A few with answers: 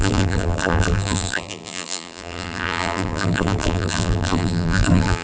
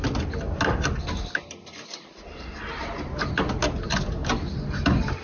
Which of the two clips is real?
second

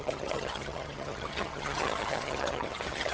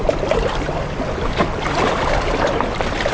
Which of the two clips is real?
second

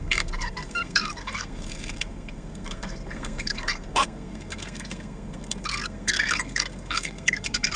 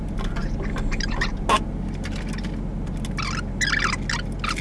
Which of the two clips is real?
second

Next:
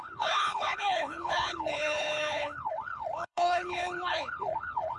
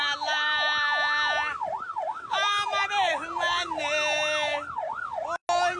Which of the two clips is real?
second